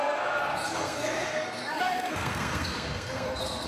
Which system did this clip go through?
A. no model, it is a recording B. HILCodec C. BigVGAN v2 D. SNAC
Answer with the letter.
D